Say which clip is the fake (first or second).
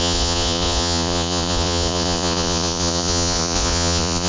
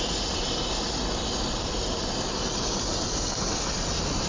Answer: first